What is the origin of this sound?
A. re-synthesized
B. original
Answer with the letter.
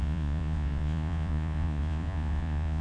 A